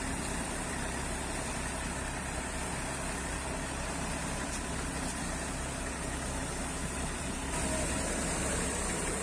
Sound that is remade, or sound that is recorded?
recorded